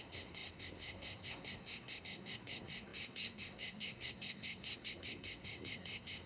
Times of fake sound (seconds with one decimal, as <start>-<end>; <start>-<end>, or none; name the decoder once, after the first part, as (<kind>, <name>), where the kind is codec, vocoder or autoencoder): 0.0-6.3 (codec, SNAC)